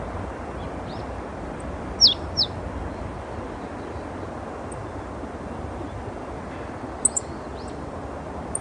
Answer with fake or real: real